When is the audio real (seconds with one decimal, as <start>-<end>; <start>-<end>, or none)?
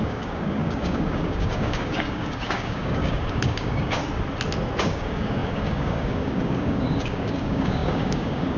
4.0-4.8